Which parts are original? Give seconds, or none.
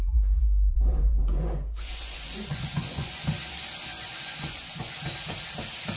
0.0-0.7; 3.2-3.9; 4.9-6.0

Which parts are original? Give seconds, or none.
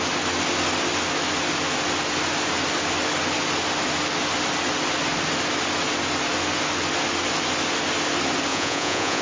0.0-8.5